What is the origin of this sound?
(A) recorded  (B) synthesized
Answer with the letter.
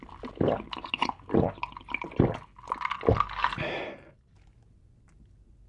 A